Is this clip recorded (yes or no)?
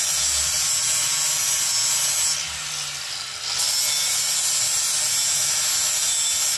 yes